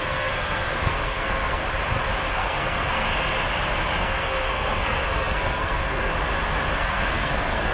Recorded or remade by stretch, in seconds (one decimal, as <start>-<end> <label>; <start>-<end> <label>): 0.0-1.6 remade; 1.6-2.3 recorded; 2.3-3.1 remade; 3.1-4.0 recorded; 4.0-6.1 remade; 6.1-6.7 recorded; 6.7-7.7 remade